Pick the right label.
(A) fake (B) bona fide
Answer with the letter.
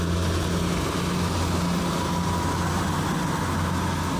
B